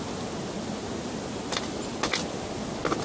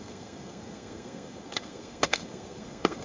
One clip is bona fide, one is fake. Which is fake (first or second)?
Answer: second